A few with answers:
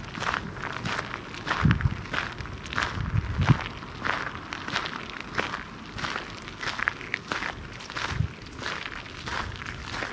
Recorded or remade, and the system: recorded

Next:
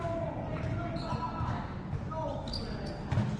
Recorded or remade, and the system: recorded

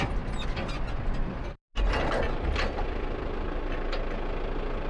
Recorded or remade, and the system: recorded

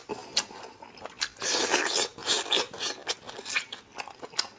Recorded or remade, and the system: recorded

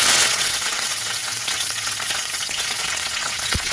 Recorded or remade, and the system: remade, vocoder, WaveNeXt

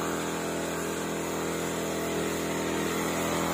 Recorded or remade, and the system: recorded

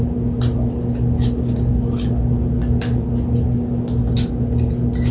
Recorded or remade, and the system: recorded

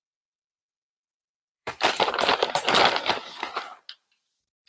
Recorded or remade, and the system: remade, vocoder, BigVGAN v2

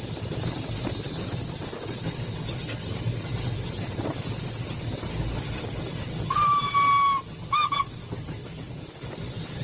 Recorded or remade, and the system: recorded